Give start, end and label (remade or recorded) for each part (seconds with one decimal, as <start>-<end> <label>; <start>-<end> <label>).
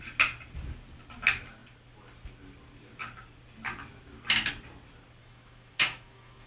0.0-5.2 recorded; 5.2-6.5 remade